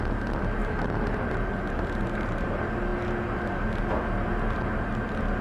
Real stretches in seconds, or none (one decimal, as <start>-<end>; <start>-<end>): 0.0-0.6; 2.5-5.4